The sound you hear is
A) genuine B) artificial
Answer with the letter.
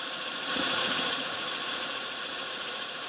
B